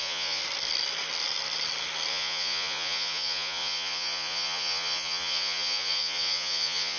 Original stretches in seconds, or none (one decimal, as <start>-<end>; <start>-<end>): 0.4-2.1